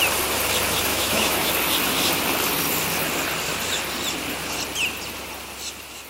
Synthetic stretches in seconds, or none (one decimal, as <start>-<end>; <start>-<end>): 0.9-1.5